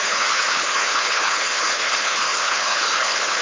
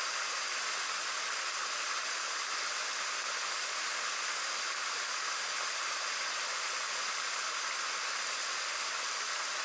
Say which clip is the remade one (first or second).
first